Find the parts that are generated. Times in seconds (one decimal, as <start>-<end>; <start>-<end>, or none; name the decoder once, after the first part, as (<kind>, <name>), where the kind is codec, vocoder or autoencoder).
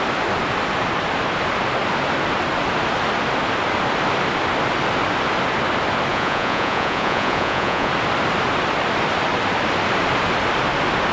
6.1-7.9 (vocoder, Vocos)